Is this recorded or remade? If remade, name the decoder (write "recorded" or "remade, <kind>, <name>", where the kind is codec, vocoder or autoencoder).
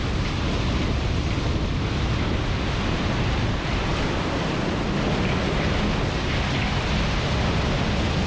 recorded